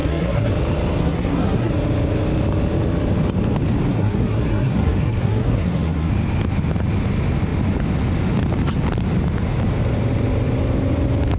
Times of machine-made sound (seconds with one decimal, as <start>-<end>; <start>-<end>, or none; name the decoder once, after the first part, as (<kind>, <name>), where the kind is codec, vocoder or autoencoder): 0.0-0.5 (codec, SNAC); 1.0-1.7; 3.9-6.1